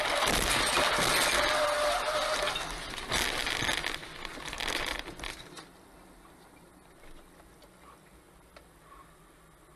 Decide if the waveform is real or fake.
real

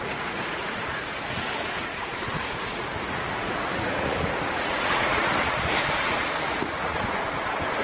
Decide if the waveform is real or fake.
fake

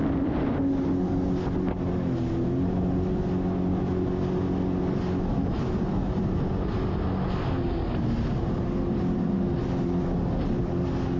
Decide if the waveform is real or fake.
real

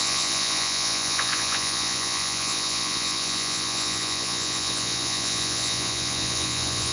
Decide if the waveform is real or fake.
fake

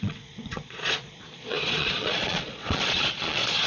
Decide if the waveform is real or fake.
fake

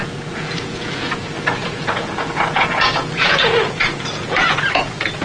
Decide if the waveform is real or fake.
fake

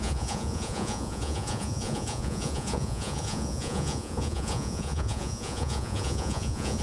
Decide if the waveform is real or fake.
fake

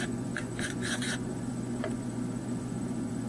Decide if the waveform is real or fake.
fake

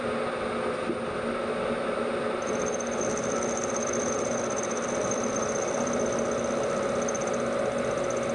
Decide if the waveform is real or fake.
real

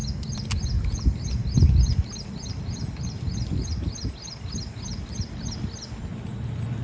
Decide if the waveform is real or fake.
real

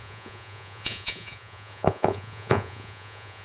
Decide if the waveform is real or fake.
fake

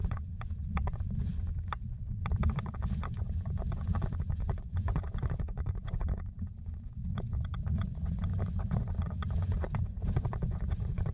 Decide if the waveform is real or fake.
fake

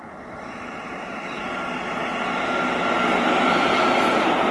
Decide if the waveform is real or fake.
real